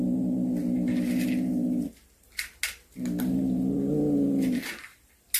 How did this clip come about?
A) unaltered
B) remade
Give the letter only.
A